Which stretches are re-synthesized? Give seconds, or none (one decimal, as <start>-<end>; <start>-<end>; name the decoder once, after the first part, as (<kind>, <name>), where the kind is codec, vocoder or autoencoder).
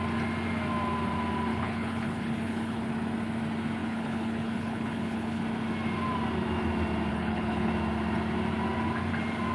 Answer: 1.5-2.8 (codec, HILCodec); 3.8-5.4; 7.1-7.7